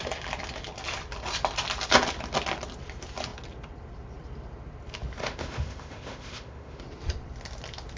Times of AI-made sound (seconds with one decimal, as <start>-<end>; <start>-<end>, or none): 5.2-6.8